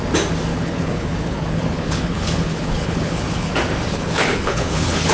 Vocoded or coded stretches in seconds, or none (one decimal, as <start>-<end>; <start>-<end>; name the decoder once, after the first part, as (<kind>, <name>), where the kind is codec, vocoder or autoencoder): 0.5-3.5 (codec, HILCodec); 3.9-5.1